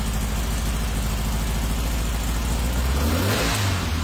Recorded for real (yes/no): yes